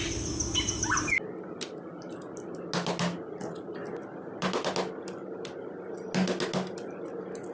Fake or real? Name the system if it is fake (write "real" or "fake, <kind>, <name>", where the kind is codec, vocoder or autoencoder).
real